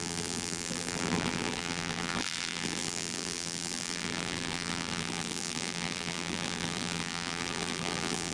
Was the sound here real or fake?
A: fake